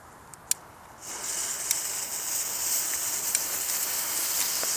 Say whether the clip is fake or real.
real